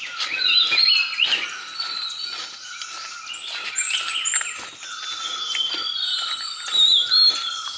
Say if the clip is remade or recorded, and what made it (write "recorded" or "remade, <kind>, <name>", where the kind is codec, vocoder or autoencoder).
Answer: recorded